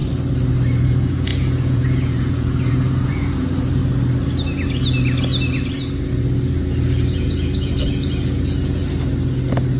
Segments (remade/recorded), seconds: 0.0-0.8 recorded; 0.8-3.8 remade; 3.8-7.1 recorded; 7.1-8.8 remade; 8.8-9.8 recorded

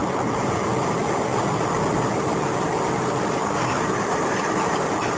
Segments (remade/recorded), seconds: 0.0-5.2 recorded

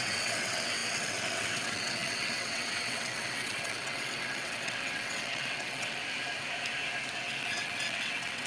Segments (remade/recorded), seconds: 0.0-6.0 remade; 6.0-7.2 recorded; 7.2-8.5 remade